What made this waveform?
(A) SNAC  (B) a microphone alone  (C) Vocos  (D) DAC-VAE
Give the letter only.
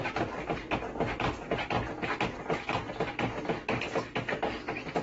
B